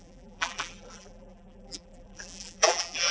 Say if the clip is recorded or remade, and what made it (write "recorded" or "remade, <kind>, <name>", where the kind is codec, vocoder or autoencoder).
remade, vocoder, BigVGAN v2